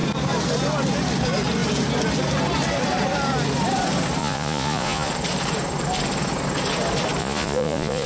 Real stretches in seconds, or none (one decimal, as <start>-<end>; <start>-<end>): 0.0-4.2; 5.1-7.2